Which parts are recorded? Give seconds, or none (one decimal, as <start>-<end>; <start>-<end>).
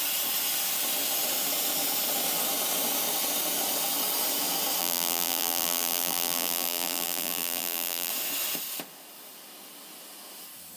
0.0-4.8; 8.1-10.8